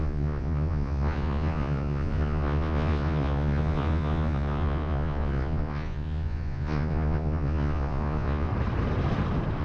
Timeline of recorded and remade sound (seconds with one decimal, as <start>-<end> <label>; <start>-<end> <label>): 0.0-8.5 remade; 8.5-9.6 recorded